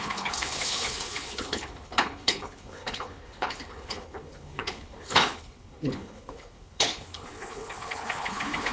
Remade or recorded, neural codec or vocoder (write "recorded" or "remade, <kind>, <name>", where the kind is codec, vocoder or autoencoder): remade, codec, HILCodec